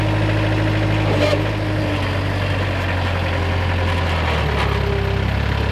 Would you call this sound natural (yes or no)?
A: yes